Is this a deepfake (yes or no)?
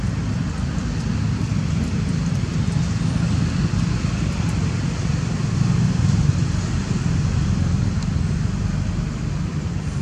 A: no